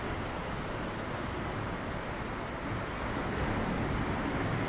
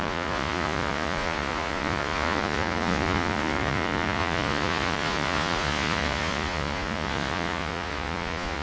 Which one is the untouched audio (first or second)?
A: first